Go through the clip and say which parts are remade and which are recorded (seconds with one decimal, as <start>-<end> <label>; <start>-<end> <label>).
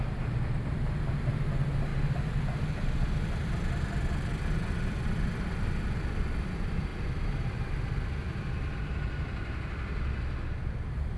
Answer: 0.0-11.2 recorded